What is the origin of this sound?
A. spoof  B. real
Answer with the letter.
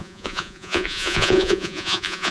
A